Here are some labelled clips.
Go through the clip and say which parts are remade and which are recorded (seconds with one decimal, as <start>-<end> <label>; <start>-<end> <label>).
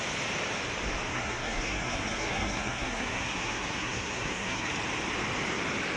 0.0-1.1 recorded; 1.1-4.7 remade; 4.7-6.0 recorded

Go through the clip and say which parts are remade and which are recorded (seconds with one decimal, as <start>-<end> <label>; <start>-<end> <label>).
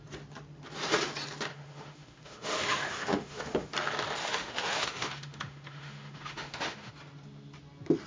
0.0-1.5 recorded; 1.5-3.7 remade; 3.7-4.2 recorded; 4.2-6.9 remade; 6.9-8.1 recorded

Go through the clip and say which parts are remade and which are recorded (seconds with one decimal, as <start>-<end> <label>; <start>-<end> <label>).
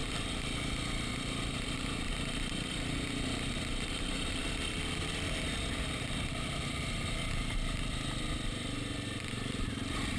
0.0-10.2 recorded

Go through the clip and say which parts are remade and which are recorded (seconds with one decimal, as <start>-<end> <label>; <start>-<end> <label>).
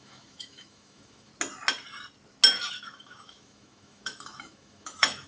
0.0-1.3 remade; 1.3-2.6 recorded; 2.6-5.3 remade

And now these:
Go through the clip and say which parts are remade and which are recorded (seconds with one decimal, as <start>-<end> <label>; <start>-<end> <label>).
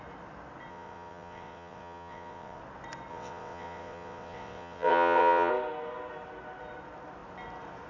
0.0-0.7 recorded; 0.7-2.6 remade; 2.6-3.1 recorded; 3.1-5.5 remade; 5.5-7.9 recorded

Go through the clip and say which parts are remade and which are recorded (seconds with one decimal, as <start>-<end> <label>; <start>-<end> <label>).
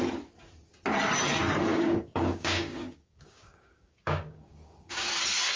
0.0-1.7 recorded; 1.7-5.1 remade; 5.1-5.6 recorded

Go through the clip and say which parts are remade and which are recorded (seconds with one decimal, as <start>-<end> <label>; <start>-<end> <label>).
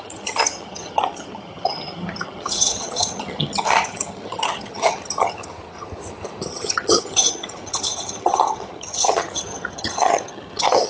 0.0-5.4 remade; 5.4-6.5 recorded; 6.5-10.9 remade